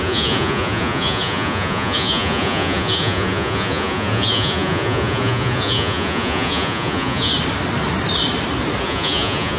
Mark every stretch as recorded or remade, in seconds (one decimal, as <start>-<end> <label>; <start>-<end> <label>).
0.0-7.3 remade; 7.3-8.8 recorded; 8.8-9.6 remade